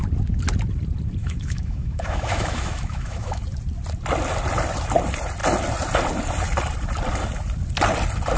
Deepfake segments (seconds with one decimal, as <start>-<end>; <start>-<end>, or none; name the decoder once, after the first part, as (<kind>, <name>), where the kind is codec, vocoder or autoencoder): 1.2-3.4 (autoencoder, DAC-VAE)